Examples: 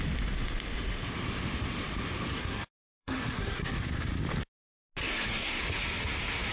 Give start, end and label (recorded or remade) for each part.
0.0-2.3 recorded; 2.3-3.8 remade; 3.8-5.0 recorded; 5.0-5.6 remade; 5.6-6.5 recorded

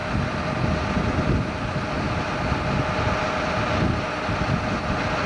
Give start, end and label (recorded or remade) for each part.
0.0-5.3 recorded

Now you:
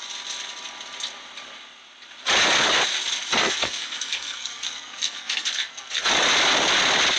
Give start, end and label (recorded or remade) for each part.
0.0-3.4 recorded; 3.4-6.1 remade; 6.1-7.2 recorded